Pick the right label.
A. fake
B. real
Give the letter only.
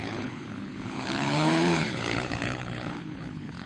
A